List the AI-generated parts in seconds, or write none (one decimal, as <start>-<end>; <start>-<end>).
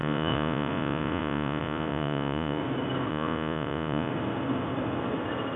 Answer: 0.0-2.6; 3.1-4.1